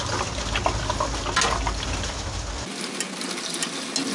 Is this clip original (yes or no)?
yes